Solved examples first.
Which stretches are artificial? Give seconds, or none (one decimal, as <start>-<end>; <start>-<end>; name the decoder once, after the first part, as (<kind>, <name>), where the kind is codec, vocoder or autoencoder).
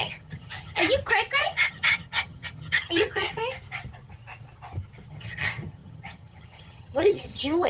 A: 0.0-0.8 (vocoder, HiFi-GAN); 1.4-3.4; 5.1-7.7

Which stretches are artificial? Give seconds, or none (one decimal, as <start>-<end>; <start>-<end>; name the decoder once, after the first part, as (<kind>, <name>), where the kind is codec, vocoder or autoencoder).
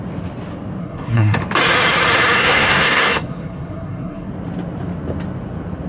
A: 0.8-1.4 (codec, SNAC); 2.4-4.3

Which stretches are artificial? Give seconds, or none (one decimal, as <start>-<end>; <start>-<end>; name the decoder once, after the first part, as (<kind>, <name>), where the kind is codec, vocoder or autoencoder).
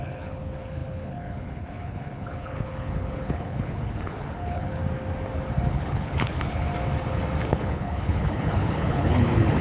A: 0.0-4.8 (codec, HILCodec); 5.7-6.7; 7.5-9.6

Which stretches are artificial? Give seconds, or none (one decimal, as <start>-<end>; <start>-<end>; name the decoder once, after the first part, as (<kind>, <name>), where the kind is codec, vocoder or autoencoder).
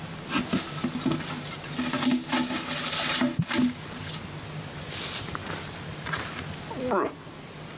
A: 5.4-6.6 (vocoder, BigVGAN v2)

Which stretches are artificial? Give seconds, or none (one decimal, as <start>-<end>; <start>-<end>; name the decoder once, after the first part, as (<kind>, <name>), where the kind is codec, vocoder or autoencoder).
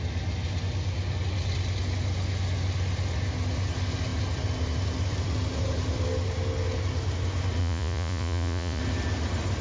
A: 7.6-8.8 (vocoder, Vocos)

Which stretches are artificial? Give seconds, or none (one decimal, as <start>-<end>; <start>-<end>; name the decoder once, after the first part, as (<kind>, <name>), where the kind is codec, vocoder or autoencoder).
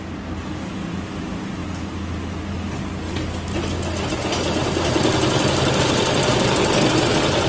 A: none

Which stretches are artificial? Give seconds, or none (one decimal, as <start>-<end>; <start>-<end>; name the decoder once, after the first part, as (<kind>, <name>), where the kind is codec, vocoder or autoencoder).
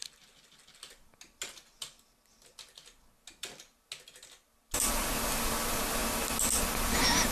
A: none